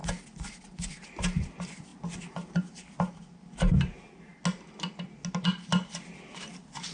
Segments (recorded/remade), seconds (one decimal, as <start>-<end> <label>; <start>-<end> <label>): 0.0-6.9 recorded